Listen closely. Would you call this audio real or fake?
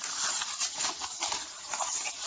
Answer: real